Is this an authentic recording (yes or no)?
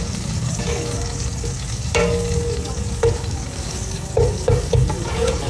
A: no